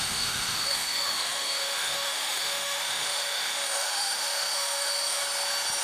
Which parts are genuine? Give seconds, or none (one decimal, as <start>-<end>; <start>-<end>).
5.2-5.8